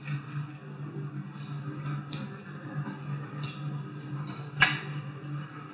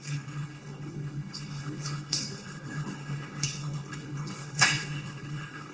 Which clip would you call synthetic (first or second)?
second